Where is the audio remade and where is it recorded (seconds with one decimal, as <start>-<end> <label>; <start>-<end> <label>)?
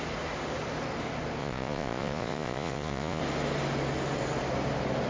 0.0-1.4 recorded; 1.4-3.2 remade; 3.2-5.1 recorded